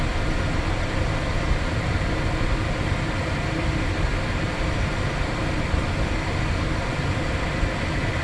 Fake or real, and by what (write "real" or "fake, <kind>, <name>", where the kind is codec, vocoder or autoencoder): real